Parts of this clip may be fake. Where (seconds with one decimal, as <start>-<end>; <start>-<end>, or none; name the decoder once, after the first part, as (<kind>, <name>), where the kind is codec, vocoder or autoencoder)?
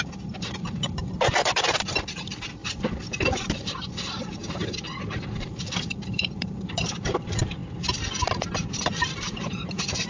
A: 0.0-2.6 (vocoder, BigVGAN v2); 3.2-4.4; 5.4-7.6; 8.8-10.1